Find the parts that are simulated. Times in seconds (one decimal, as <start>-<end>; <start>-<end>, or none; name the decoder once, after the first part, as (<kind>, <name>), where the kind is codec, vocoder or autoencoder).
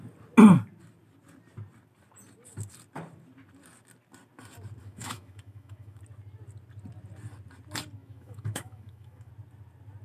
4.8-6.0 (autoencoder, DAC-VAE); 8.0-9.3